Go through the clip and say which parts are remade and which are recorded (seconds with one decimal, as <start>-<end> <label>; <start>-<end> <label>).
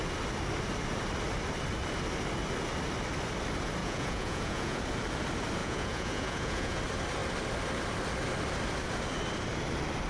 0.0-3.8 recorded; 3.8-4.8 remade; 4.8-5.6 recorded; 5.6-6.8 remade; 6.8-10.1 recorded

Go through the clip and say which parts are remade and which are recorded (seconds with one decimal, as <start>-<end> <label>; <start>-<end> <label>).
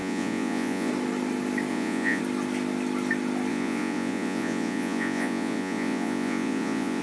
0.0-0.9 remade; 0.9-1.7 recorded; 1.7-2.2 remade; 2.2-3.5 recorded; 3.5-7.0 remade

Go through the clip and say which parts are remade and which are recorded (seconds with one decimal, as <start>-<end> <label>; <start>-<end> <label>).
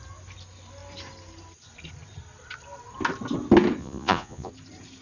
0.0-3.8 recorded; 3.8-4.5 remade; 4.5-5.0 recorded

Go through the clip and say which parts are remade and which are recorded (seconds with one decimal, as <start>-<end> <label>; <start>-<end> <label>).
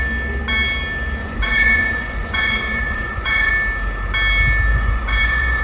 0.0-1.2 recorded; 1.2-3.5 remade; 3.5-4.7 recorded; 4.7-5.6 remade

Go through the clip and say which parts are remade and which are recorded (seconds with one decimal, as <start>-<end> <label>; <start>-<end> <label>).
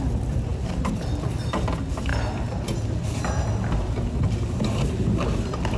0.0-5.8 recorded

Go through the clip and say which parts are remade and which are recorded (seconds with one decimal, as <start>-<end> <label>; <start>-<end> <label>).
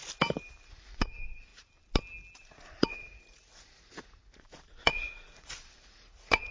0.0-0.6 recorded; 0.6-1.5 remade; 1.5-2.4 recorded; 2.4-6.5 remade